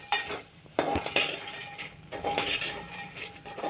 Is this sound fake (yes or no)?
yes